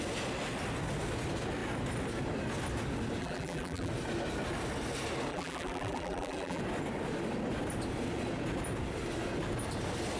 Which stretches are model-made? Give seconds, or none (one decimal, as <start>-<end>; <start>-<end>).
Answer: 3.2-3.9; 5.3-6.6